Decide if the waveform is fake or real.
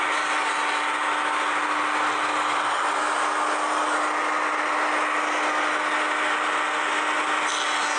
real